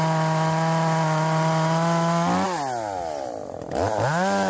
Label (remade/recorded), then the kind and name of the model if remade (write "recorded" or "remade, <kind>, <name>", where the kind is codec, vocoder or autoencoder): recorded